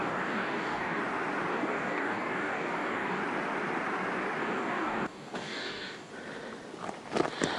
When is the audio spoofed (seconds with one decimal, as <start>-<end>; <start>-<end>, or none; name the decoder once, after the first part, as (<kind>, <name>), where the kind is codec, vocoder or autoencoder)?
0.0-1.0 (codec, DAC); 1.5-3.2; 4.4-6.1